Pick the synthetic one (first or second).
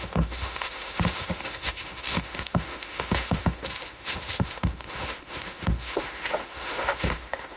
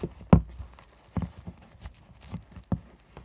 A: first